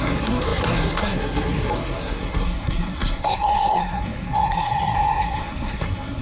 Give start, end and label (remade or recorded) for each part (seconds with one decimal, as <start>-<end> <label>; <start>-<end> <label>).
0.0-6.2 remade